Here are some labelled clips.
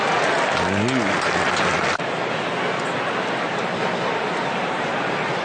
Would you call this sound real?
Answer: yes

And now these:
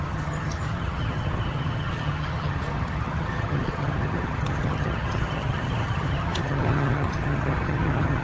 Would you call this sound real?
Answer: no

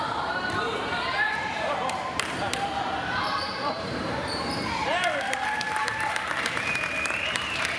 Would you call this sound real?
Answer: no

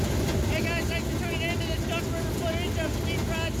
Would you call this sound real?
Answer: yes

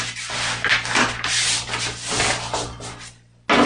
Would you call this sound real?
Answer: yes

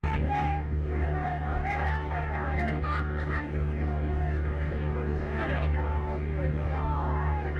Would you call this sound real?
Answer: no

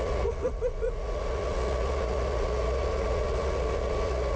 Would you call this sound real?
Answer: no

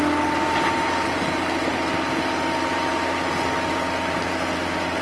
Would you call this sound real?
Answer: yes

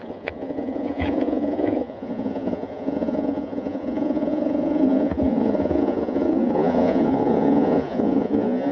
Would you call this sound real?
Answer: no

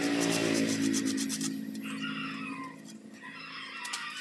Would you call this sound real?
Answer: yes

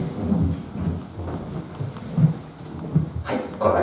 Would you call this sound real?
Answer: yes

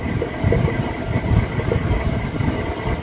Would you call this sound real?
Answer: yes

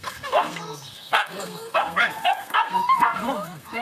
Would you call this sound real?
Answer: no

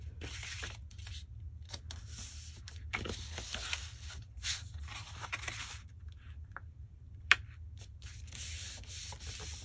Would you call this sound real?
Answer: yes